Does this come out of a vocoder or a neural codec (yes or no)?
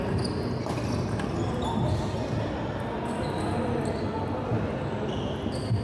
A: no